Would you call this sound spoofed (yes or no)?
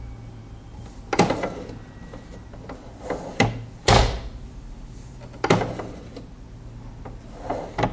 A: no